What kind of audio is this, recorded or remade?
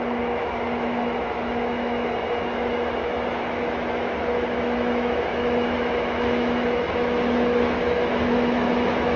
remade